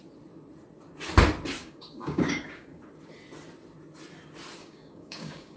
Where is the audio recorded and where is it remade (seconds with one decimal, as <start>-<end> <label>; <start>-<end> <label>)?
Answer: 0.0-1.6 recorded; 1.6-2.8 remade; 2.8-4.6 recorded; 4.6-5.6 remade